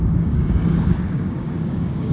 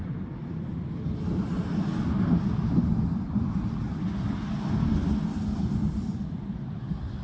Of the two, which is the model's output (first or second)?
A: first